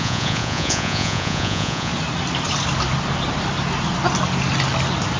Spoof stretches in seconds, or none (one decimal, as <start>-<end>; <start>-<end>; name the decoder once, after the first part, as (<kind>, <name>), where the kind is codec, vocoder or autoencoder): 0.0-1.9 (vocoder, Vocos)